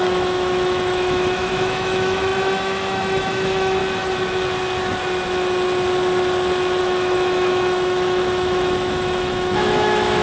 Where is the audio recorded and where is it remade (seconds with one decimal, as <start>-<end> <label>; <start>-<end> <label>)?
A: 0.0-3.8 remade; 3.8-6.8 recorded; 6.8-10.2 remade